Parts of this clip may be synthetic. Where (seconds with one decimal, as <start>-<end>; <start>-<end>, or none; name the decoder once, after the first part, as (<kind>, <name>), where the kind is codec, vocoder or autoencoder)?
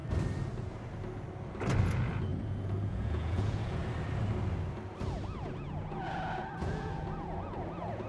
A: 1.8-3.8 (vocoder, Vocos); 5.4-8.1